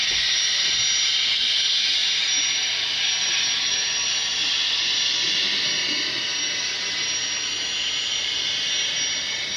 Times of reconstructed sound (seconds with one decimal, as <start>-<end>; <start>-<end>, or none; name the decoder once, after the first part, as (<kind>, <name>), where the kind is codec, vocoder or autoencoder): none